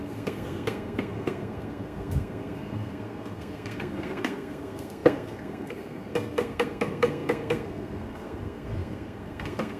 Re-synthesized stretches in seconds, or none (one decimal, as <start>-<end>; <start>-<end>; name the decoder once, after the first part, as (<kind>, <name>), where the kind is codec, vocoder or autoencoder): 0.0-9.8 (codec, SNAC)